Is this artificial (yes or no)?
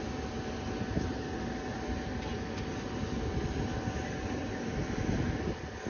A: no